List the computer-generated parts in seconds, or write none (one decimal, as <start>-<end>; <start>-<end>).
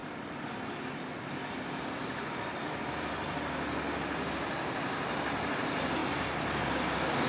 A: none